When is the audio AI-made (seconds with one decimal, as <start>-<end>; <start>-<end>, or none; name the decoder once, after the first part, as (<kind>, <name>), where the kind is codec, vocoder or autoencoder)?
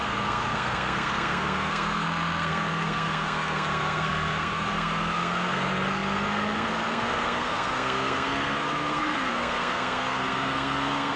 0.0-11.2 (codec, SNAC)